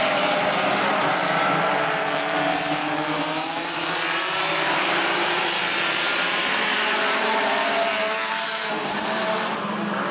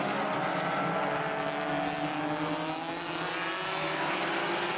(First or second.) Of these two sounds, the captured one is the second